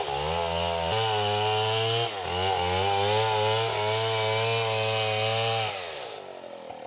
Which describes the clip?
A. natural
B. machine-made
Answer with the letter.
A